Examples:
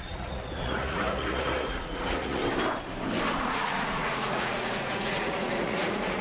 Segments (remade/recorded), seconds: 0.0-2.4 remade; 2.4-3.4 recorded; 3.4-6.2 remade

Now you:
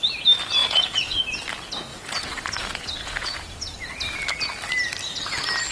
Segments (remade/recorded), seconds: 0.0-0.6 recorded; 0.6-1.2 remade; 1.2-1.9 recorded; 1.9-3.6 remade; 3.6-5.7 recorded

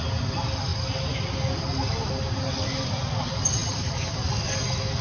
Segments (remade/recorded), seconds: 0.0-5.0 recorded